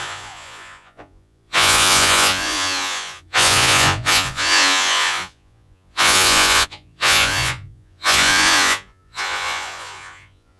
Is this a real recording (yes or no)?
no